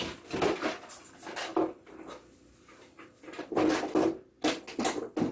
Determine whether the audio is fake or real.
real